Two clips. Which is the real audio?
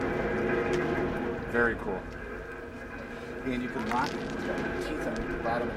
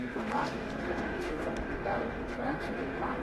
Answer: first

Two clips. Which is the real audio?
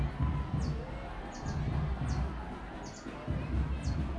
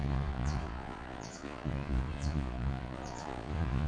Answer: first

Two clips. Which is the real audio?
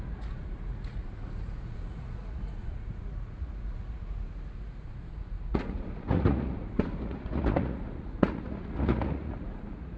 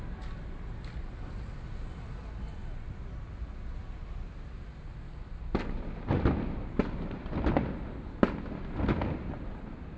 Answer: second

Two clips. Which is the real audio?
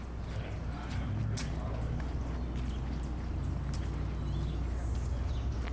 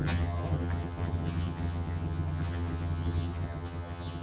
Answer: first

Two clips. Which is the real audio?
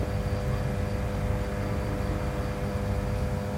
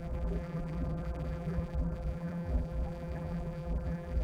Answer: first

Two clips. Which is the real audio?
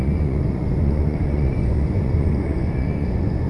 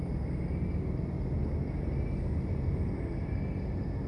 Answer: second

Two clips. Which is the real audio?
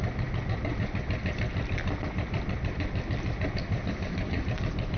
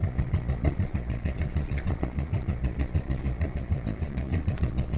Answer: first